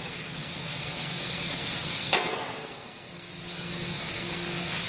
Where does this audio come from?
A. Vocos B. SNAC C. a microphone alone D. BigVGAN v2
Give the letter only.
B